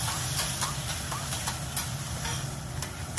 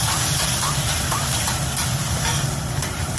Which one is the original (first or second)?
first